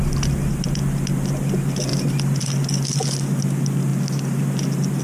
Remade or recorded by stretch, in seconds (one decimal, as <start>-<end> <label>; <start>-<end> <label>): 0.0-5.0 recorded